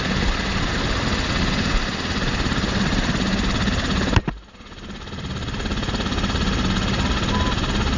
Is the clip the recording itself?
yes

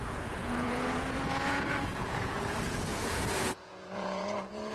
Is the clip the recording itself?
no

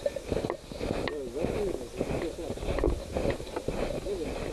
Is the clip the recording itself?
yes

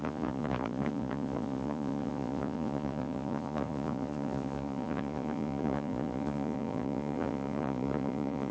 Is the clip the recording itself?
no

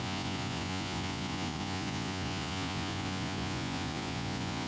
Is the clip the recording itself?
no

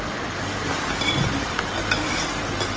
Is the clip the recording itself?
yes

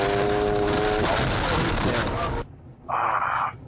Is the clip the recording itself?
yes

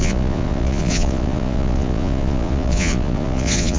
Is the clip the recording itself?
no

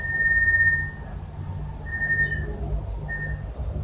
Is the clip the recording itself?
yes